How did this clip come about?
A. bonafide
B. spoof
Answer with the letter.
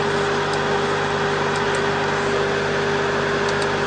A